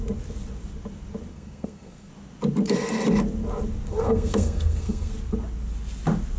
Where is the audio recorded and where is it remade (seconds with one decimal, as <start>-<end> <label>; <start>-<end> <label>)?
0.0-1.3 recorded; 1.3-2.1 remade; 2.1-3.9 recorded; 3.9-5.1 remade; 5.1-6.4 recorded